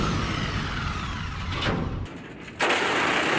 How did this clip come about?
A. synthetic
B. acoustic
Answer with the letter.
B